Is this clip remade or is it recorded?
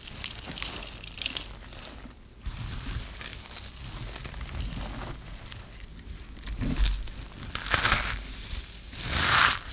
recorded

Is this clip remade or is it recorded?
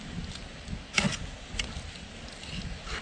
recorded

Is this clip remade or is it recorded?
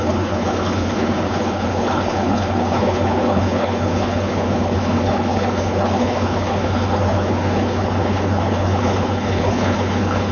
remade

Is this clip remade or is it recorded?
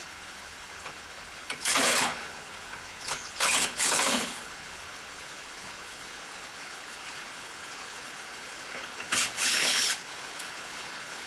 remade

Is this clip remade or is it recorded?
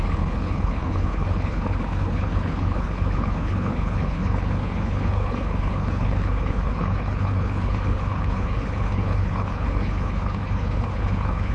remade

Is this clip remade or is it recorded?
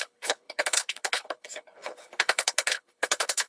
remade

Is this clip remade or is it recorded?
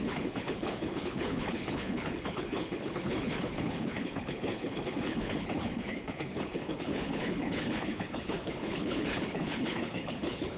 remade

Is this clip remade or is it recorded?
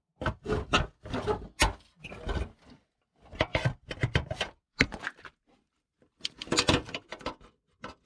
recorded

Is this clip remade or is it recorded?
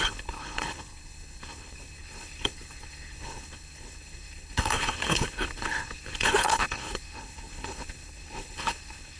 remade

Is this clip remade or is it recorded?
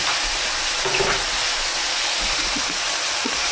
recorded